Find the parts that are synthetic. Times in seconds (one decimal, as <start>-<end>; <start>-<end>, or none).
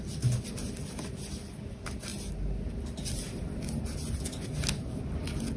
none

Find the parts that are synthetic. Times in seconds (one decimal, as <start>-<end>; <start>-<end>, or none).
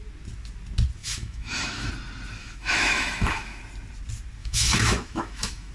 1.0-1.9; 2.4-3.6; 4.4-5.7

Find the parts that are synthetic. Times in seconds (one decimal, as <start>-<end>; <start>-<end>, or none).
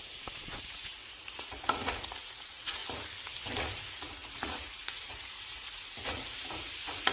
0.0-2.8; 3.6-7.1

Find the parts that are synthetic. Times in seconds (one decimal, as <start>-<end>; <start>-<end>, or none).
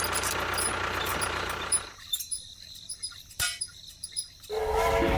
1.1-4.2